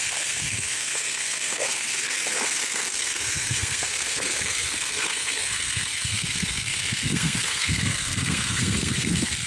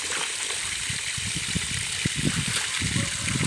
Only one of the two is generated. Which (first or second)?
first